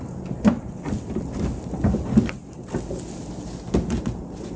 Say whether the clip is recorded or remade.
recorded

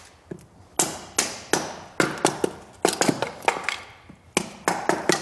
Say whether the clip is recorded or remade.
recorded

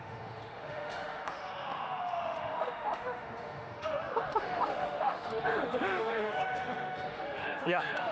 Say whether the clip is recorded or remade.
remade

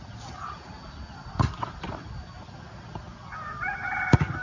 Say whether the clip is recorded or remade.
recorded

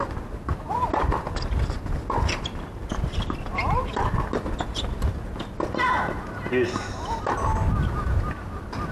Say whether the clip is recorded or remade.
recorded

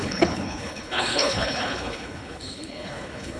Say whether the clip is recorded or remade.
remade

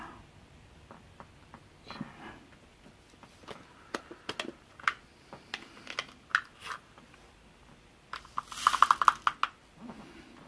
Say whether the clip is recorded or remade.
recorded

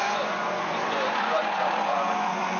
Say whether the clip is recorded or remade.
remade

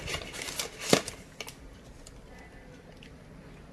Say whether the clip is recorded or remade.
recorded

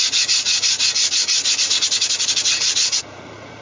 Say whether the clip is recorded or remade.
remade